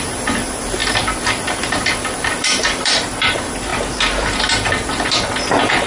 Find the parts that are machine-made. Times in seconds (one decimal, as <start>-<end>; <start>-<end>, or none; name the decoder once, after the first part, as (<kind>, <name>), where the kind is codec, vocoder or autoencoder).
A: 0.0-5.9 (vocoder, BigVGAN v2)